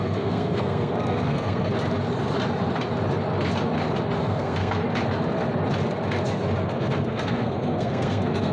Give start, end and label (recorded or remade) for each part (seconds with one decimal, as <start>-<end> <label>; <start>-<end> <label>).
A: 0.0-1.7 remade; 1.7-4.2 recorded; 4.2-4.8 remade; 4.8-6.6 recorded; 6.6-8.5 remade